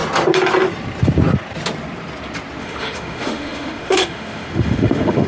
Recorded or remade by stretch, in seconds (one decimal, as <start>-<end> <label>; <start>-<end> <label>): 0.0-2.6 recorded; 2.6-5.3 remade